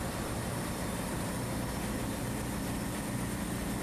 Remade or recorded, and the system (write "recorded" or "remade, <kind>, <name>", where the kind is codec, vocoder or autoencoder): recorded